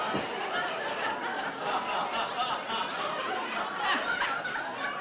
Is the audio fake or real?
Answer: real